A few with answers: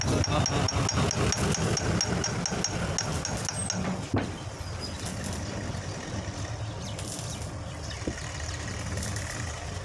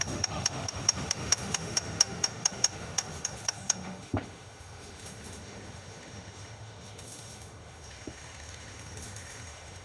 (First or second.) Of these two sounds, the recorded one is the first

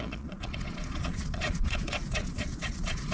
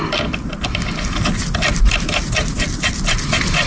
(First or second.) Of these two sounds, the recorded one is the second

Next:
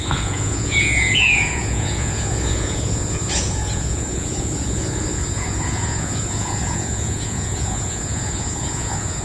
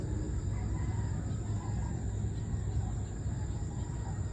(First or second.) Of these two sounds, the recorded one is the second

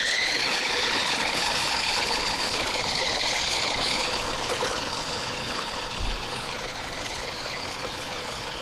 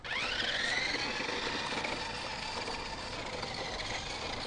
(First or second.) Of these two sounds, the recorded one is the second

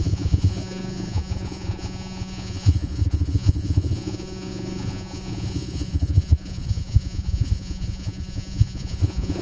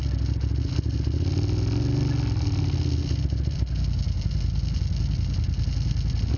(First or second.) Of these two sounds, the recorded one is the second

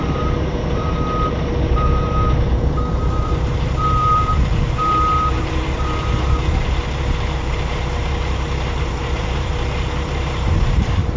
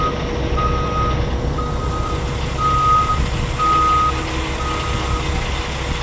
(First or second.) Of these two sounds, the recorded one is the second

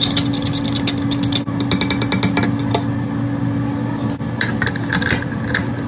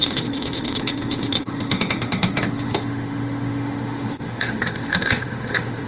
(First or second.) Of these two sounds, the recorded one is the first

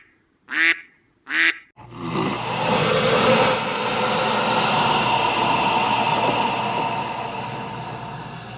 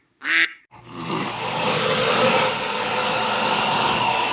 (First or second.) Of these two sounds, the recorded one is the first